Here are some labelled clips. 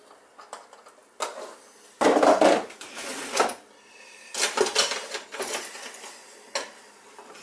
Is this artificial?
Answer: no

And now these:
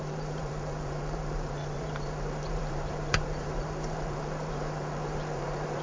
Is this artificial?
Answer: yes